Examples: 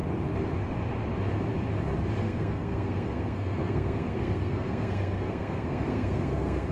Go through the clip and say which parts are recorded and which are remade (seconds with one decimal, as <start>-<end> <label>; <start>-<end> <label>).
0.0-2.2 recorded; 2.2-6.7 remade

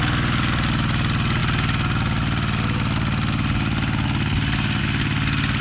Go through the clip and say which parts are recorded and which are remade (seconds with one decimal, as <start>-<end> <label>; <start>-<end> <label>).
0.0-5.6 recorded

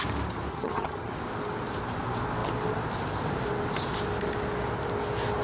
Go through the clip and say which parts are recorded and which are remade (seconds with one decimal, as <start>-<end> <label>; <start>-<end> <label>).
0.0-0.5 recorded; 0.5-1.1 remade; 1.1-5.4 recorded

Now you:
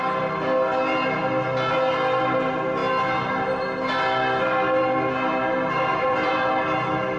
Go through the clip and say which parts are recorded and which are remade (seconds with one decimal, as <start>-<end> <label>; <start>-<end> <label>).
0.0-5.9 recorded; 5.9-6.5 remade; 6.5-7.2 recorded

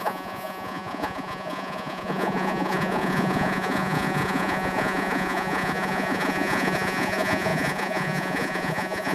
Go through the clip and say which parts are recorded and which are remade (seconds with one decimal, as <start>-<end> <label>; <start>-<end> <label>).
0.0-9.1 remade